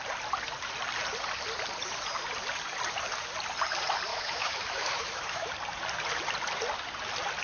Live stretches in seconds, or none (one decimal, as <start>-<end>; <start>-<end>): 0.0-4.1; 5.5-7.4